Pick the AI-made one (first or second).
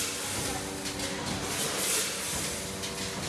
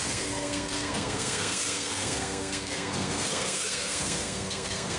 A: second